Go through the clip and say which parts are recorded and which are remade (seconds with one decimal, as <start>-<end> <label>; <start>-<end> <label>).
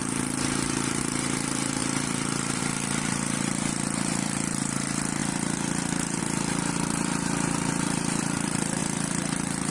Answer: 0.0-1.0 recorded; 1.0-5.2 remade; 5.2-6.2 recorded; 6.2-8.8 remade; 8.8-9.7 recorded